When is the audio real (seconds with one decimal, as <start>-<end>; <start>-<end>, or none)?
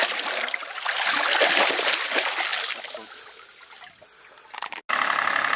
0.0-5.6